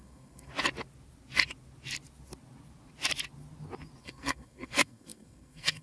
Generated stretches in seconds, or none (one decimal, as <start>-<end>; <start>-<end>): 0.0-0.5; 4.0-5.8